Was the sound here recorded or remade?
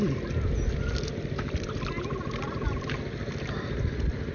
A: recorded